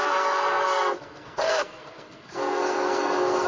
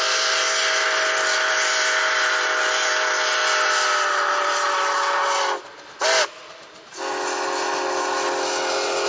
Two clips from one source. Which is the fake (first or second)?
first